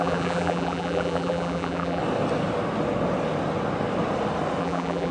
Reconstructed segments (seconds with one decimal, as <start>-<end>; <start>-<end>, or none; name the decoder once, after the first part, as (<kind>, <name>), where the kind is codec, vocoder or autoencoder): 0.0-2.0 (vocoder, BigVGAN v2); 4.6-5.1